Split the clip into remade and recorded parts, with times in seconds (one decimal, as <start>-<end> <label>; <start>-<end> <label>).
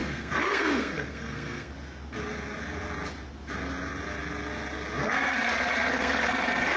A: 0.0-1.7 remade; 1.7-5.0 recorded; 5.0-6.8 remade